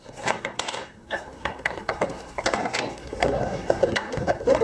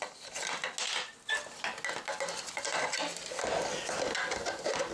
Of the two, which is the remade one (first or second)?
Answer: first